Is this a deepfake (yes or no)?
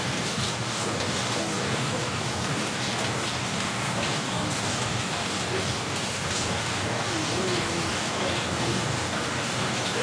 yes